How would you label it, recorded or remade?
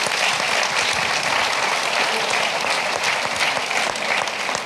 recorded